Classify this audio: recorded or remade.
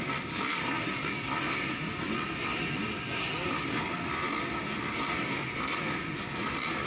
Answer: recorded